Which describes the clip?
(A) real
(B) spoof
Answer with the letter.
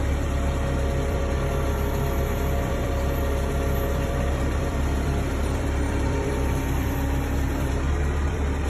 B